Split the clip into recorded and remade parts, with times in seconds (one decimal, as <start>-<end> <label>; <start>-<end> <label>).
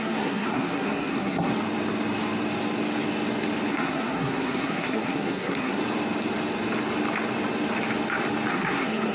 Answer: 0.0-1.5 remade; 1.5-3.7 recorded; 3.7-5.8 remade; 5.8-8.5 recorded; 8.5-9.1 remade